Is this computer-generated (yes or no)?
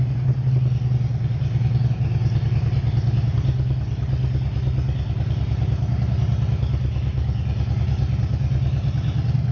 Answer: no